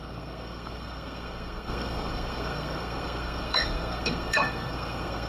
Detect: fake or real fake